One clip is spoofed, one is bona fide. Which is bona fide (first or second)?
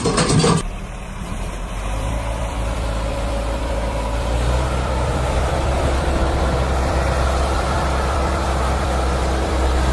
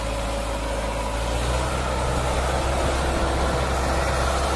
second